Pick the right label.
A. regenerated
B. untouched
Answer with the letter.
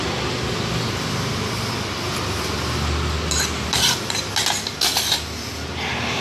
B